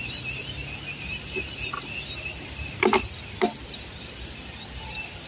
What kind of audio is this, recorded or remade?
recorded